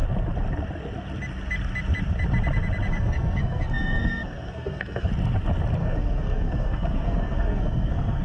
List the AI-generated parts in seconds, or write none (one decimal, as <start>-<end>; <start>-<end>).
2.9-5.1; 5.8-8.2